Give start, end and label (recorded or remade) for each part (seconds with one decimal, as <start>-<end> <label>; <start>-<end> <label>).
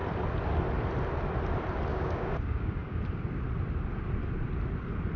0.0-1.9 recorded; 1.9-3.0 remade; 3.0-5.2 recorded